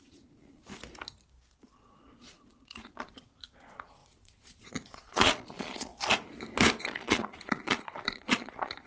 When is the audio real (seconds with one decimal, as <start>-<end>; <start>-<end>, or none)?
0.7-1.5; 5.9-6.8